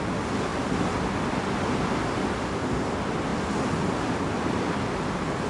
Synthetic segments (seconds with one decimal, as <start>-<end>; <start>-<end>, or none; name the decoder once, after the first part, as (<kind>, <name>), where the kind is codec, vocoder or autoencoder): none